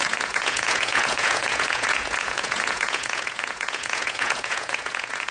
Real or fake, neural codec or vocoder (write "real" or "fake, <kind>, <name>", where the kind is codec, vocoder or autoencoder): fake, vocoder, Vocos